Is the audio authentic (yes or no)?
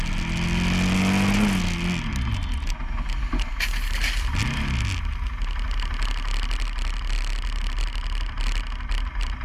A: yes